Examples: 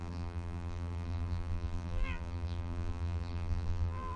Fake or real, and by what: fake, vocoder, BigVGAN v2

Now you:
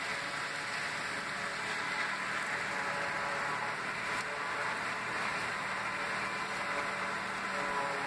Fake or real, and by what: real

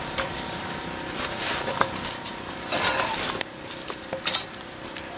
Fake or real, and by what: fake, vocoder, BigVGAN v2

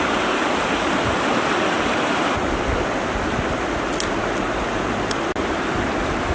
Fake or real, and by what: real